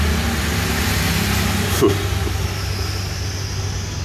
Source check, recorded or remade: recorded